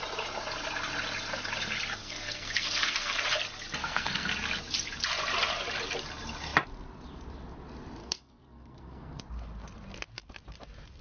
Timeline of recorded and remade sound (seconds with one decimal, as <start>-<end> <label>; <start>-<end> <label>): 0.0-2.0 recorded; 2.0-3.2 remade; 3.2-3.8 recorded; 3.8-4.3 remade; 4.3-8.0 recorded; 8.0-9.2 remade; 9.2-11.0 recorded